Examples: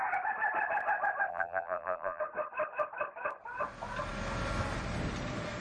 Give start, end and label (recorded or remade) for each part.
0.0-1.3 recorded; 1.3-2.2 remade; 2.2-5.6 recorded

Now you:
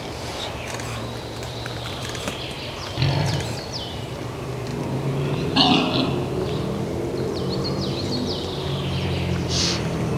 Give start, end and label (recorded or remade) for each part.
0.0-4.7 remade; 4.7-9.6 recorded; 9.6-10.2 remade

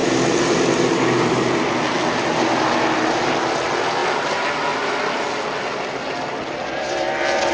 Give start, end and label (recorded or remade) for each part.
0.0-7.5 recorded

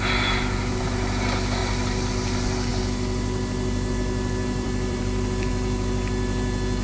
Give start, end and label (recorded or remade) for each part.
0.0-1.6 recorded; 1.6-2.1 remade; 2.1-2.7 recorded; 2.7-5.5 remade; 5.5-6.8 recorded